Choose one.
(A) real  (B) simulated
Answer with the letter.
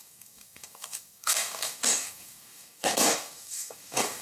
B